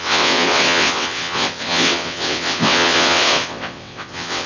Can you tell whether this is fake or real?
fake